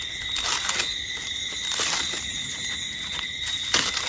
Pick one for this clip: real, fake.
real